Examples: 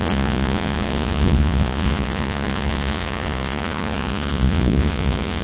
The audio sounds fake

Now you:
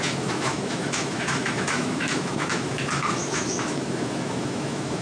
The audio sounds fake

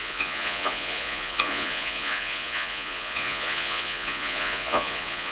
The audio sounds fake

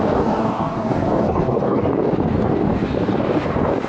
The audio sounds fake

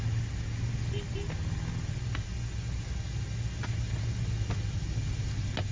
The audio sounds real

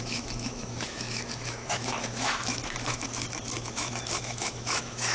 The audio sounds fake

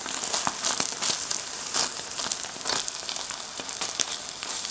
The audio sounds real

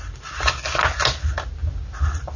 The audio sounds real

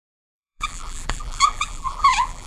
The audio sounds fake